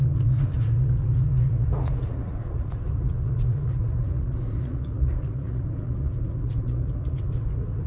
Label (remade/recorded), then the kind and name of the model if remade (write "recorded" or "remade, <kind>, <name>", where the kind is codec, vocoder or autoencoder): remade, vocoder, Vocos